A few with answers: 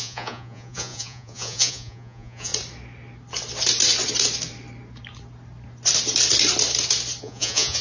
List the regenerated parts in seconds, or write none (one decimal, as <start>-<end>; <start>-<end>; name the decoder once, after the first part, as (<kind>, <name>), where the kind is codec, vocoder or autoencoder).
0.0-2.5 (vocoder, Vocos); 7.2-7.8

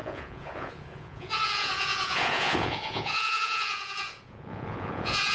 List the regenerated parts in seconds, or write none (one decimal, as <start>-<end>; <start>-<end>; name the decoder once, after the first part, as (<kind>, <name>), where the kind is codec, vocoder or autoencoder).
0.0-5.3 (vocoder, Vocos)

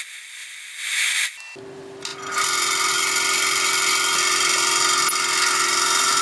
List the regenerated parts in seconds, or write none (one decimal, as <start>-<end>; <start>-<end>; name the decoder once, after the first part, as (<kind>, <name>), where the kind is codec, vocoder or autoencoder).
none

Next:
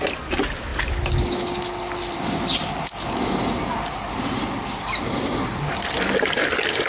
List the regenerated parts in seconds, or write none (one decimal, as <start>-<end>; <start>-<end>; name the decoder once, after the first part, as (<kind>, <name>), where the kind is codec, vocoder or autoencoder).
none

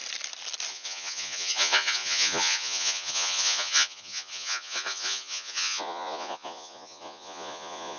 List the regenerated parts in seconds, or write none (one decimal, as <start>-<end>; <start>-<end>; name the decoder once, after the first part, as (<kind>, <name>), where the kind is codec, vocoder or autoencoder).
0.7-8.0 (vocoder, Vocos)

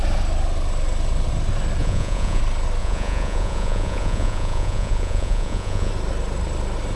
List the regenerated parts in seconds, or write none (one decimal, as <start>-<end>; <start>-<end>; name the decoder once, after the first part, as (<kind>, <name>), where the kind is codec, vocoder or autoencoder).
1.8-2.4 (vocoder, Vocos); 2.8-5.9

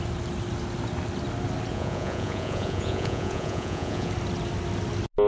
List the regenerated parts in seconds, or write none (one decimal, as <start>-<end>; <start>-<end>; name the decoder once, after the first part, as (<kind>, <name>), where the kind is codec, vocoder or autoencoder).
1.7-4.1 (vocoder, Vocos)

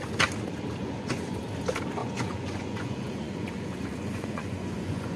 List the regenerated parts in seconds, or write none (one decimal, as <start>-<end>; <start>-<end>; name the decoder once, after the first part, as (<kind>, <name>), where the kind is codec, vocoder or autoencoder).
0.8-1.4 (vocoder, Vocos); 2.0-5.2